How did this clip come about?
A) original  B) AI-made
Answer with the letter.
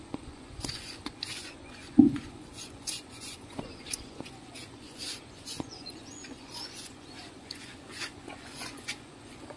B